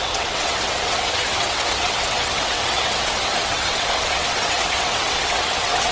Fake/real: fake